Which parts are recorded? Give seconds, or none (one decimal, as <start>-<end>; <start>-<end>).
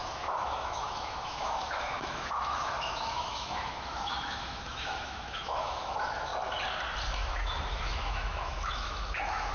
6.3-7.1